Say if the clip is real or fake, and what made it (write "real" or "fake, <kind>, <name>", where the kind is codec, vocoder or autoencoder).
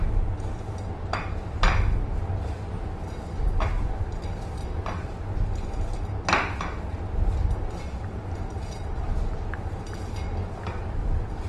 real